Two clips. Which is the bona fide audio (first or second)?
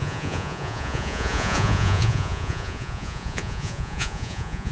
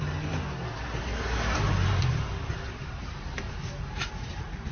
second